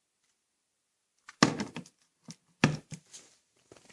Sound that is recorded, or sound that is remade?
recorded